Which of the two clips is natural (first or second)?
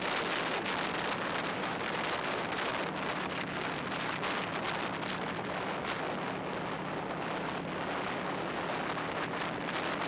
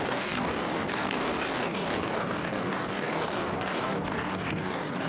first